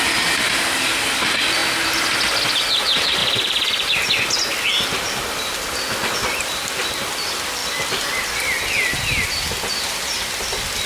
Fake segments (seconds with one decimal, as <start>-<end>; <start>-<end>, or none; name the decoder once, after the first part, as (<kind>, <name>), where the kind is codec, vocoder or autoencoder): 3.2-4.1 (vocoder, BigVGAN v2)